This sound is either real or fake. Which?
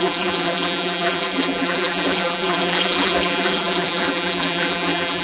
fake